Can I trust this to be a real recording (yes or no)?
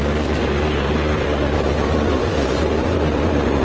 no